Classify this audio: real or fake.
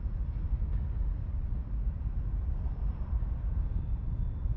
real